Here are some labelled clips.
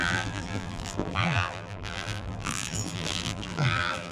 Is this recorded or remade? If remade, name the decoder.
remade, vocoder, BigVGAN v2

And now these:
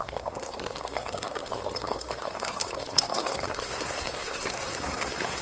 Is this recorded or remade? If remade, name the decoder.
remade, codec, SNAC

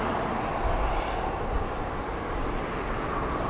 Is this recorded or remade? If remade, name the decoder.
recorded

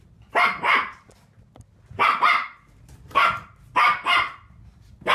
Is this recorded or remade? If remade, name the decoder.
recorded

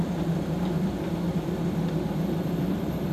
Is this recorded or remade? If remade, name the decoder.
remade, vocoder, BigVGAN v2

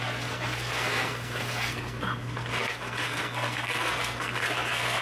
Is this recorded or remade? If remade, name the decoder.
remade, codec, SNAC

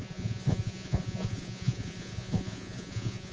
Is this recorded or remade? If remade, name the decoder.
remade, vocoder, Vocos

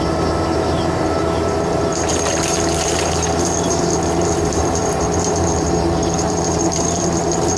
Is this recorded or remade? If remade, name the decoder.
remade, vocoder, BigVGAN v2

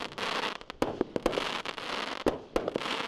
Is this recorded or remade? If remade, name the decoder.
recorded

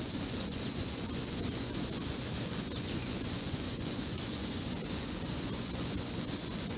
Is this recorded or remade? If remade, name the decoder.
remade, vocoder, Vocos